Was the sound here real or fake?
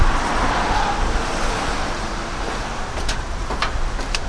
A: fake